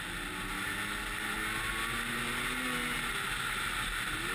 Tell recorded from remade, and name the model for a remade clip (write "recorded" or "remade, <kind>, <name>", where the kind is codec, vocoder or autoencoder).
recorded